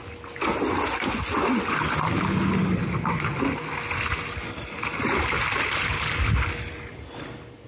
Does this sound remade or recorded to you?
recorded